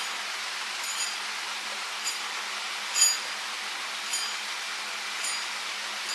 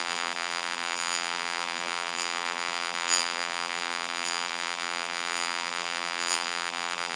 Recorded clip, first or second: first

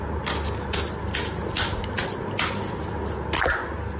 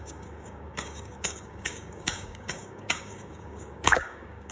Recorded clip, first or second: first